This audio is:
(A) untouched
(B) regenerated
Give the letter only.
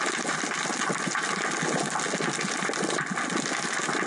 A